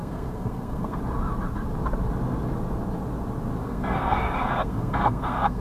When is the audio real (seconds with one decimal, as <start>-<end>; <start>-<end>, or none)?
1.0-3.6